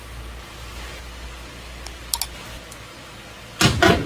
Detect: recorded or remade recorded